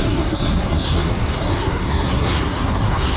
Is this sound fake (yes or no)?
yes